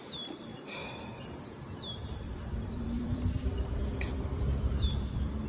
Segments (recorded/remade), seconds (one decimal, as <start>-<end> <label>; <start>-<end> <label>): 0.0-0.5 remade; 0.5-1.9 recorded; 1.9-5.5 remade